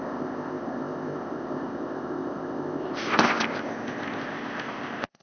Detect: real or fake fake